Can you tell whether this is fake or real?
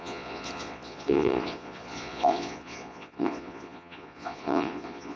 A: fake